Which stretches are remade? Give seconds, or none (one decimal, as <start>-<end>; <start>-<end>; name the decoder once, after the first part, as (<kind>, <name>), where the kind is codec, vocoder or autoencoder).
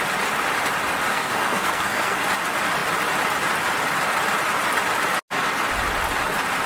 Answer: 1.1-2.2 (codec, SNAC)